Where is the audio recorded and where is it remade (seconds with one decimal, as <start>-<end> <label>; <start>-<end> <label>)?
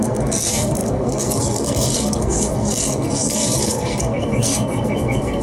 0.0-5.4 remade